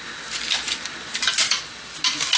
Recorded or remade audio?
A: recorded